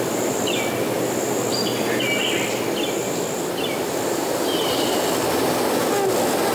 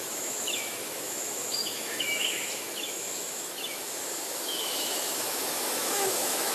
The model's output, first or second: second